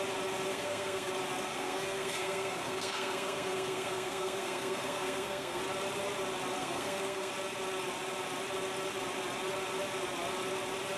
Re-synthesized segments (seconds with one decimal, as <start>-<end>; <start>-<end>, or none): 0.5-1.1; 1.5-5.6; 6.6-7.3